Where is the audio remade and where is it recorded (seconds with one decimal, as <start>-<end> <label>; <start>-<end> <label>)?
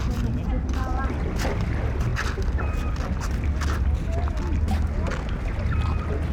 0.0-6.3 recorded